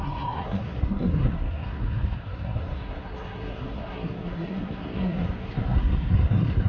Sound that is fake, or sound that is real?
fake